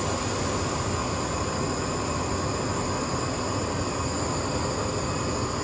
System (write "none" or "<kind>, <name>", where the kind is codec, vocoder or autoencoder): none